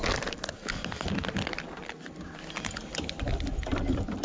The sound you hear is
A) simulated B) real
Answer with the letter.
B